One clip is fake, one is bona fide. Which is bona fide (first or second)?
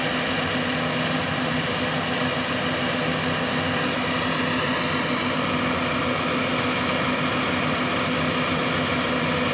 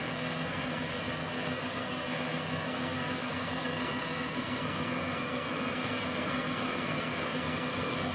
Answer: first